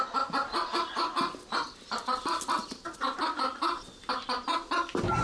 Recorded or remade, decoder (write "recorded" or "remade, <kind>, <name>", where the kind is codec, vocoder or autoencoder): recorded